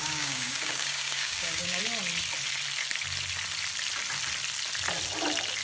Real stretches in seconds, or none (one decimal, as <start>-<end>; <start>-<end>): 1.8-5.6